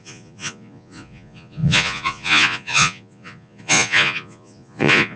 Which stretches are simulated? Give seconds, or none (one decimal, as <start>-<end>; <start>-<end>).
0.0-5.2